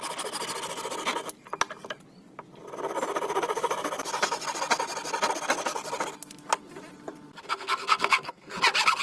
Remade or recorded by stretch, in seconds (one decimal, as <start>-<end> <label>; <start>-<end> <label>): 0.0-7.4 recorded; 7.4-8.5 remade; 8.5-9.0 recorded